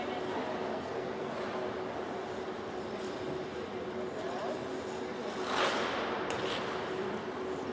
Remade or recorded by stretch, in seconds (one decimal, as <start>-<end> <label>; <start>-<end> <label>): 0.0-0.7 recorded; 0.7-1.3 remade; 1.3-7.7 recorded